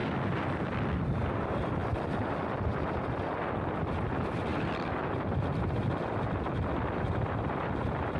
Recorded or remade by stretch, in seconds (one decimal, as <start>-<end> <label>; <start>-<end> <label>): 0.0-0.6 recorded; 0.6-8.2 remade